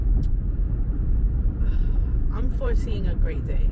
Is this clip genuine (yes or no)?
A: no